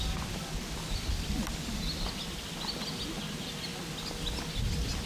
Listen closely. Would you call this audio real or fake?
real